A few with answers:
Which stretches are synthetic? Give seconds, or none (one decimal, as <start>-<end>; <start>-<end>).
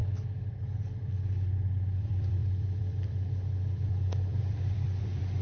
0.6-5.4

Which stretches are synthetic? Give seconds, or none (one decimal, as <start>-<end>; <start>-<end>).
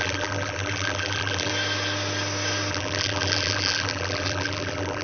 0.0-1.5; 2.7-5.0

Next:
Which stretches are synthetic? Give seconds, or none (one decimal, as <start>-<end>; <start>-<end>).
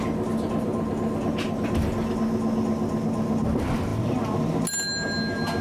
none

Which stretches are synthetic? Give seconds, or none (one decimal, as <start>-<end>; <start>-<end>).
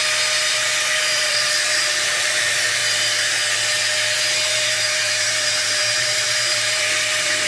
0.5-2.8; 4.2-7.5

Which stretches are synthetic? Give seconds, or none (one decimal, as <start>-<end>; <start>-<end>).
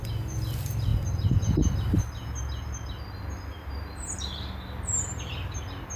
none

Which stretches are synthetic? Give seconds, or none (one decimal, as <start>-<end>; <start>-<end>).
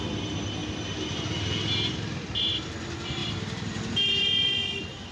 none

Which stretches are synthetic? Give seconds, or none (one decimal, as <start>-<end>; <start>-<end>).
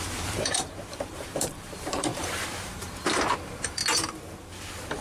0.0-3.8; 4.5-5.0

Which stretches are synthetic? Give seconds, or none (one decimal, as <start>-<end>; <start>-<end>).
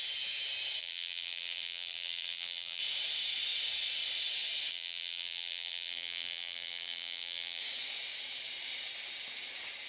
0.8-2.8; 4.7-7.6